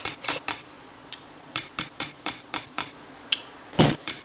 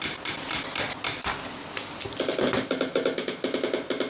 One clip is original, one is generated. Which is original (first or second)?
second